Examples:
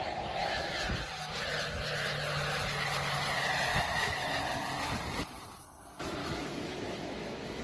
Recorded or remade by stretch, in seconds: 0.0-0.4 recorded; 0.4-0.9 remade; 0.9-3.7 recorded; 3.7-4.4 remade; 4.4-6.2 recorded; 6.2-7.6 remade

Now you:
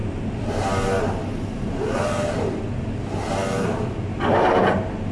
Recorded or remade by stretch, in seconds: 0.0-5.1 recorded

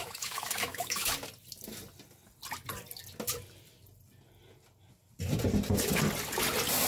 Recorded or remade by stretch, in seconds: 0.0-1.1 remade; 1.1-6.9 recorded